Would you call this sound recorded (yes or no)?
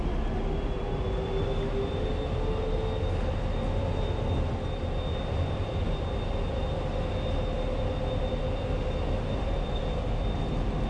yes